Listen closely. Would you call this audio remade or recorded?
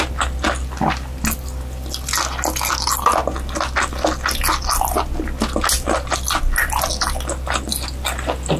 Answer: recorded